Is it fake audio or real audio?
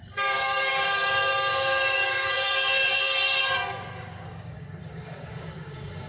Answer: fake